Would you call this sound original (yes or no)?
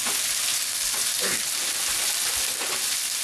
yes